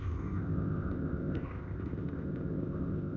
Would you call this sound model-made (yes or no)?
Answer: yes